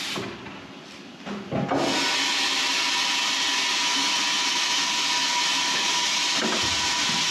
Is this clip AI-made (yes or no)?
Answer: no